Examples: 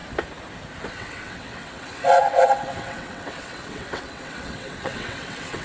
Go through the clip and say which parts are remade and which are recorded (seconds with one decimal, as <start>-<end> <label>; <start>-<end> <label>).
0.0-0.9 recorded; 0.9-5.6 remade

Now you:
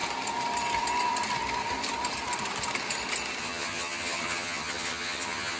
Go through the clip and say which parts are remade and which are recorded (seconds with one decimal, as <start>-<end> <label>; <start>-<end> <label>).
0.0-3.4 recorded; 3.4-5.6 remade

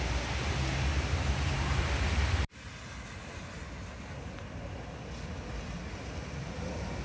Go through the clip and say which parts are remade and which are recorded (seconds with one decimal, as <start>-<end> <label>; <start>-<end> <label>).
0.0-0.9 recorded; 0.9-1.8 remade; 1.8-7.0 recorded

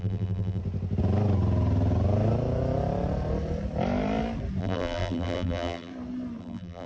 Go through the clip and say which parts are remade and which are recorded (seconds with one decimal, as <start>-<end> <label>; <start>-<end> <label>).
0.0-0.6 remade; 0.6-4.6 recorded; 4.6-5.9 remade; 5.9-6.4 recorded; 6.4-6.9 remade

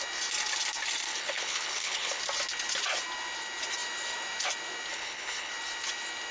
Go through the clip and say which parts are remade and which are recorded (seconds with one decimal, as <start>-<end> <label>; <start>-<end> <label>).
0.0-1.1 recorded; 1.1-2.2 remade; 2.2-4.9 recorded; 4.9-5.5 remade; 5.5-6.3 recorded